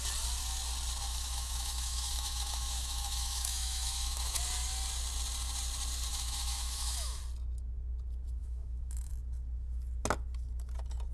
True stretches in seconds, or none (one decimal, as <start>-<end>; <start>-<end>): 0.0-1.1; 4.4-6.1; 7.2-8.4; 9.1-11.1